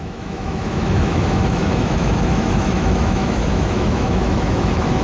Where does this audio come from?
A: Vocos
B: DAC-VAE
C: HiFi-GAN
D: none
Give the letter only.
B